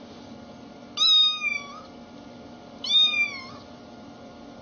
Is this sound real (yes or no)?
yes